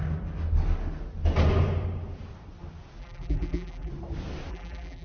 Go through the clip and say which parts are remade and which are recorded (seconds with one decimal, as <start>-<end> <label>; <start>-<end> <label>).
0.0-3.0 recorded; 3.0-3.9 remade; 3.9-4.5 recorded; 4.5-5.0 remade